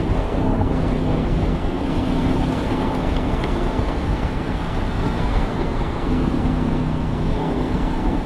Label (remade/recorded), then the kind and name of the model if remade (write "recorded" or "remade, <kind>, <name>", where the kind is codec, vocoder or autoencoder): remade, codec, SNAC